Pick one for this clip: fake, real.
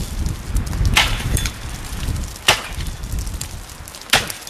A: real